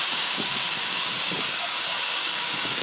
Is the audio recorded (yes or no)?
no